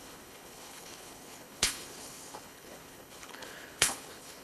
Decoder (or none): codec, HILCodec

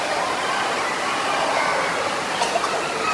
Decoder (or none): none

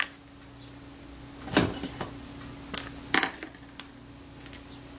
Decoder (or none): none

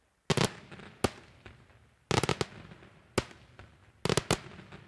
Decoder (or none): none